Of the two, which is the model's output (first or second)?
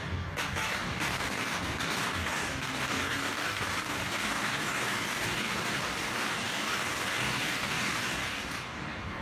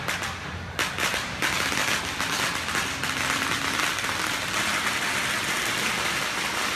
first